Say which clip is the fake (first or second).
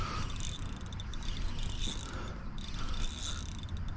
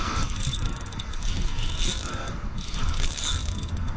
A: second